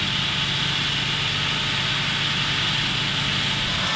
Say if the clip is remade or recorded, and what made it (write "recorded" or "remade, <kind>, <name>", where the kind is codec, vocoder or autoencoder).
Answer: recorded